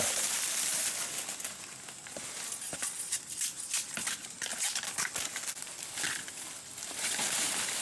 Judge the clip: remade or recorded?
recorded